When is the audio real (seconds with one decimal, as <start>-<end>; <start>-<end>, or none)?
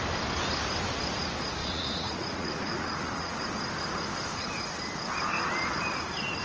0.0-1.6; 3.4-6.4